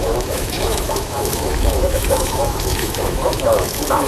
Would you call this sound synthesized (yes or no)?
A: yes